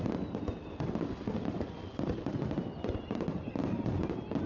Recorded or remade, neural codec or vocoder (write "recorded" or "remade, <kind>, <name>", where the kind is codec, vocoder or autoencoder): recorded